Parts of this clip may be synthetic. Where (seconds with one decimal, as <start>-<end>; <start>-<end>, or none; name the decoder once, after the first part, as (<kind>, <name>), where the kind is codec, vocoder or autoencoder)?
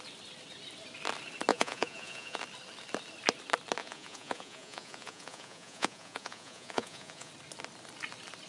1.5-2.4 (vocoder, Vocos); 3.8-7.3